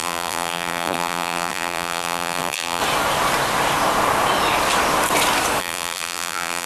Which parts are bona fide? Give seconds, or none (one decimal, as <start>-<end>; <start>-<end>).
2.8-5.6